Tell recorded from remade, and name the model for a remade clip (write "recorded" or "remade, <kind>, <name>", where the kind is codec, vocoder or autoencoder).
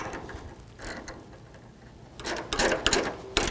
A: recorded